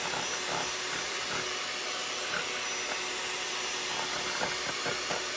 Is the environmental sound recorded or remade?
recorded